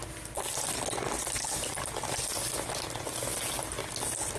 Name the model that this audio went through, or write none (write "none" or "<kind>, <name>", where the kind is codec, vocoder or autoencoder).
none